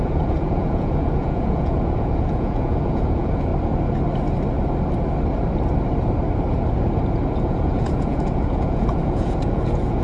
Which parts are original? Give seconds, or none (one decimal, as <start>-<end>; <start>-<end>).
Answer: 3.5-7.4